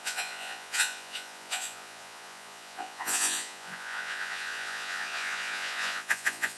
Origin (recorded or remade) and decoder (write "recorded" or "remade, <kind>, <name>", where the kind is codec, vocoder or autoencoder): remade, vocoder, Vocos